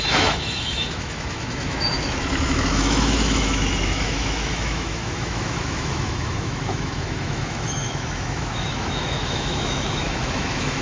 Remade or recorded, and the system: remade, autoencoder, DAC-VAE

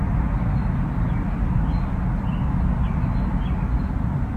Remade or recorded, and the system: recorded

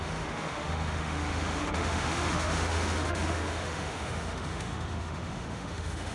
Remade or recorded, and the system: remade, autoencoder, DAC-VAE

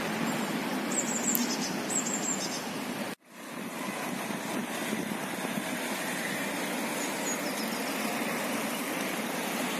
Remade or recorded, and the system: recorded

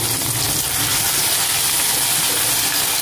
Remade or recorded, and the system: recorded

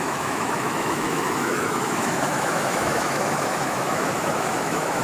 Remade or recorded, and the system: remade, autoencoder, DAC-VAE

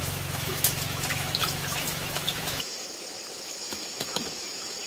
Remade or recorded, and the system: remade, autoencoder, DAC-VAE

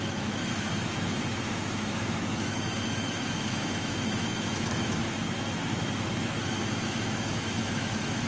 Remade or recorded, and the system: remade, autoencoder, DAC-VAE